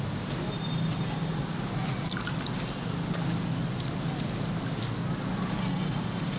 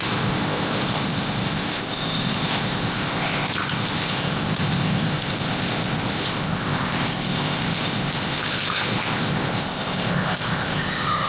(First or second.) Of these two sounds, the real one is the first